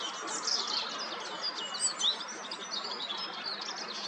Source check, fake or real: real